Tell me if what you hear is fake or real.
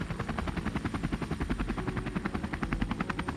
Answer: real